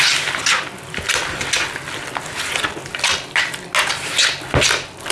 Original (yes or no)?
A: yes